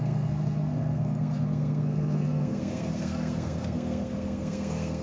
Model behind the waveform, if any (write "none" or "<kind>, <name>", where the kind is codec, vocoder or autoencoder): codec, SNAC